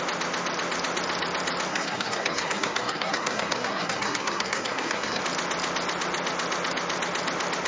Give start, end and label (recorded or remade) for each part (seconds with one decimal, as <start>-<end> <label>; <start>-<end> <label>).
0.0-1.7 recorded; 1.7-5.2 remade; 5.2-7.7 recorded